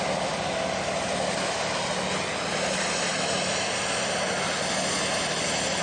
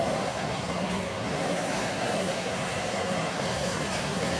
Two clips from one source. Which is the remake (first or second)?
second